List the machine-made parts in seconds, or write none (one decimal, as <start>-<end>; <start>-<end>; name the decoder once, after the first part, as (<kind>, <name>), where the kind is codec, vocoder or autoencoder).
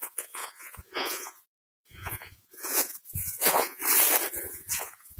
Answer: 0.0-3.8 (vocoder, Vocos); 4.3-5.2